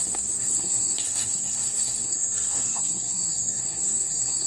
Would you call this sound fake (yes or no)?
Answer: yes